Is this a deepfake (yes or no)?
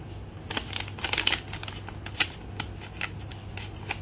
no